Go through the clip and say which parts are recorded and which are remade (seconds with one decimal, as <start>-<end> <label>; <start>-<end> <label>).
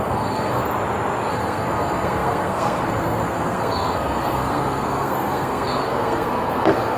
0.0-0.6 remade; 0.6-1.3 recorded; 1.3-7.0 remade